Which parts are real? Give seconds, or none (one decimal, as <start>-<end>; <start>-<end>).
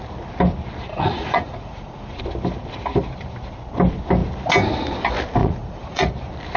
0.0-0.9; 2.2-5.4; 6.1-6.6